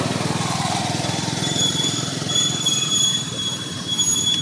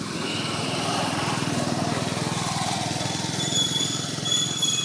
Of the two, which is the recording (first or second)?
second